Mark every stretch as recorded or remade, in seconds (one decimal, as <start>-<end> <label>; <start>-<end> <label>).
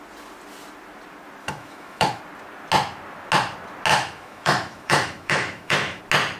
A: 0.0-1.4 recorded; 1.4-2.2 remade; 2.2-3.9 recorded; 3.9-6.0 remade; 6.0-6.4 recorded